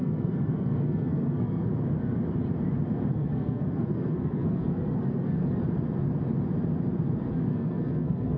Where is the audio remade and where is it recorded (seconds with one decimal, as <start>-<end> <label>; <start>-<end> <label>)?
0.0-1.7 remade; 1.7-3.1 recorded; 3.1-5.4 remade; 5.4-7.3 recorded; 7.3-8.4 remade